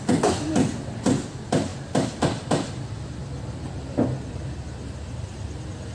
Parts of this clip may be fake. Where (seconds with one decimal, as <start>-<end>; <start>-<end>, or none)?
none